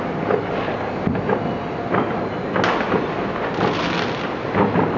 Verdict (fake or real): real